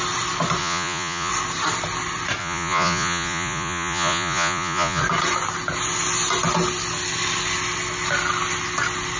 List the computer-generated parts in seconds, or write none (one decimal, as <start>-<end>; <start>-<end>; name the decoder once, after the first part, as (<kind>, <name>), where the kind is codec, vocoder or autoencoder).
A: 0.6-1.3 (vocoder, Vocos); 2.4-5.0